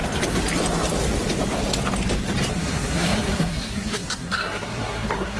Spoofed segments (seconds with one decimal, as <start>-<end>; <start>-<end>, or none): 2.5-5.4